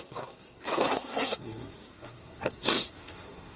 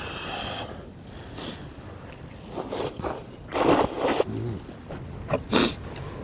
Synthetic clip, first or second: first